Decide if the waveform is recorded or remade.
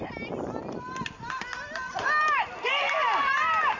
recorded